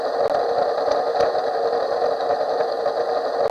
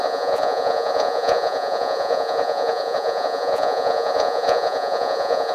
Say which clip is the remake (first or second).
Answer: second